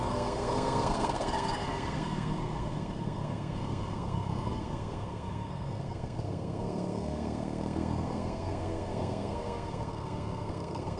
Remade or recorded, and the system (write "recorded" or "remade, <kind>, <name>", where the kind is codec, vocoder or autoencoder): remade, codec, SNAC